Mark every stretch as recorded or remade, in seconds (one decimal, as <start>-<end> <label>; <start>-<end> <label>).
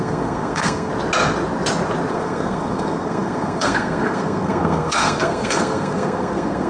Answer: 0.0-0.9 remade; 0.9-2.1 recorded; 2.1-6.7 remade